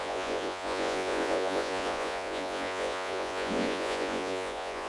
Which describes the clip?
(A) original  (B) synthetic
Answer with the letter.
B